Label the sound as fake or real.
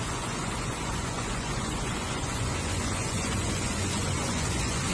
fake